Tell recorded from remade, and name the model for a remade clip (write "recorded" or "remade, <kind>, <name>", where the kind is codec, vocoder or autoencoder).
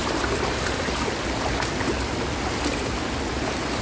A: recorded